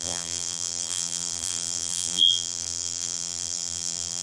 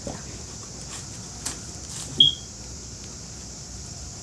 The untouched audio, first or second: second